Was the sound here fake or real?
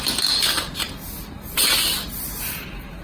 real